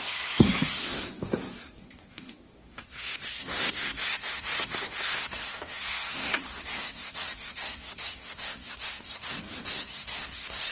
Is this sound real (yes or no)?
no